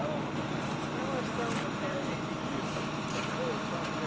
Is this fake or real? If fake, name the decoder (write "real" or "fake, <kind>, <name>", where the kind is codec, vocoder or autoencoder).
real